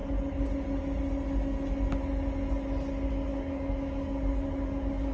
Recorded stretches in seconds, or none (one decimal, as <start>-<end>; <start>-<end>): 0.0-3.3